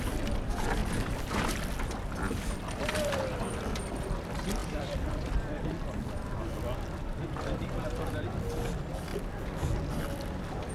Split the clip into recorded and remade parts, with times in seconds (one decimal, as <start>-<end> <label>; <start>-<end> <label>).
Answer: 0.0-0.8 remade; 0.8-2.9 recorded; 2.9-9.1 remade; 9.1-9.9 recorded; 9.9-10.7 remade